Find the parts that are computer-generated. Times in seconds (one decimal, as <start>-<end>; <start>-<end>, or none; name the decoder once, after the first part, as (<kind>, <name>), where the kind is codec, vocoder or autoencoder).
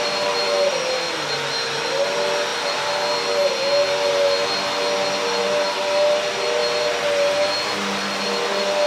0.0-2.5 (vocoder, BigVGAN v2); 5.2-8.9